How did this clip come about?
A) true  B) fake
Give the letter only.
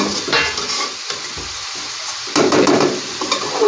B